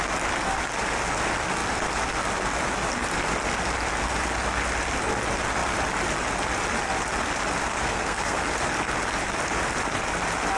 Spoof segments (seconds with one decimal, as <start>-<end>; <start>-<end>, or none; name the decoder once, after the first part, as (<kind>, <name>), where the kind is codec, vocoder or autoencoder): 7.7-8.4 (codec, SNAC)